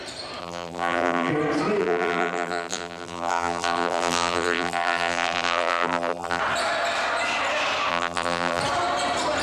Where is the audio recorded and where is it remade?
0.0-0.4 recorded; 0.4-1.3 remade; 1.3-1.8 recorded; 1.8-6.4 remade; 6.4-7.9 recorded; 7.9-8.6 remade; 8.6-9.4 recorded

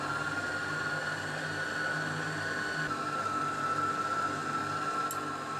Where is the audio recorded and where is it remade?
0.0-5.6 recorded

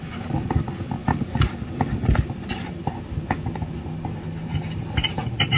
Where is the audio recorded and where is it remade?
0.0-1.0 recorded; 1.0-1.7 remade; 1.7-5.6 recorded

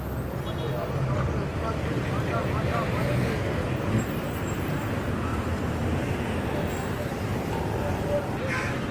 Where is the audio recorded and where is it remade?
0.0-1.5 recorded; 1.5-3.1 remade; 3.1-5.3 recorded; 5.3-7.5 remade; 7.5-8.9 recorded